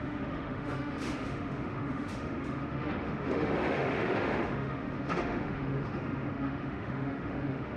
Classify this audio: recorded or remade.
remade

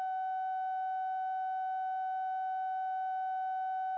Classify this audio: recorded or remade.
recorded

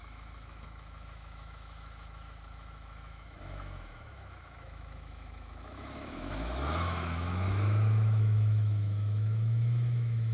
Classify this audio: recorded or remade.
remade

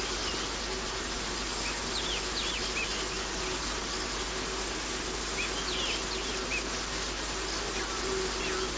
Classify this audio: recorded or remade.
recorded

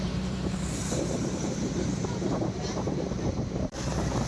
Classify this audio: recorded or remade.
remade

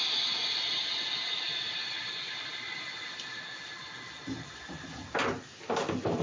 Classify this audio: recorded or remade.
recorded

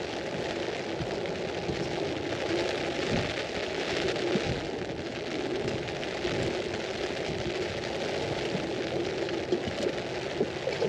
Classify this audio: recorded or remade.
recorded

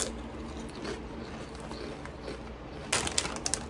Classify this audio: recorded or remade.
recorded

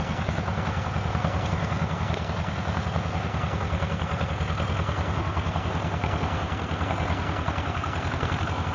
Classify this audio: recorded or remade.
remade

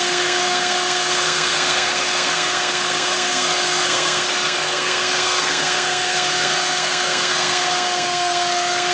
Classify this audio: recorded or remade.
remade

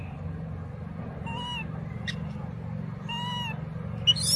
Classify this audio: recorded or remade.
recorded